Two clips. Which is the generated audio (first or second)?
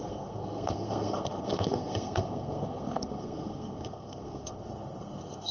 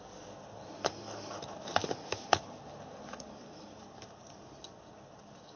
first